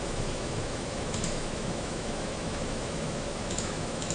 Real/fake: fake